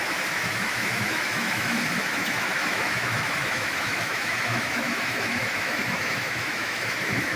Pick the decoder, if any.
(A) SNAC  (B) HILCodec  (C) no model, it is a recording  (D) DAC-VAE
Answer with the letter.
D